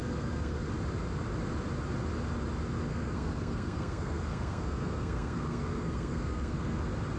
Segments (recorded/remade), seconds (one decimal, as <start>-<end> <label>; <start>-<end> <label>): 0.0-0.7 remade; 0.7-2.9 recorded; 2.9-6.8 remade; 6.8-7.2 recorded